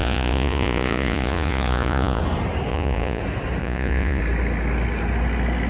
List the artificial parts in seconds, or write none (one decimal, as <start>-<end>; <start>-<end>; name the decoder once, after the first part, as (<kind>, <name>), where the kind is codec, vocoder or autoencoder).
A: 0.0-2.2 (vocoder, Vocos); 2.7-3.2; 3.6-4.2